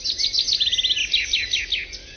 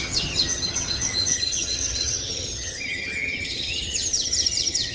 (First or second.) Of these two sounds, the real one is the first